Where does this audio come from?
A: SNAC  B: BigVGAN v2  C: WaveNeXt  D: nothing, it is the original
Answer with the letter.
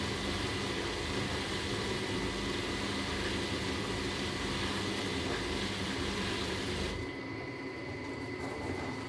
D